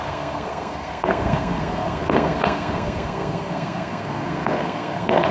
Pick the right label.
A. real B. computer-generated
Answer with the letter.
B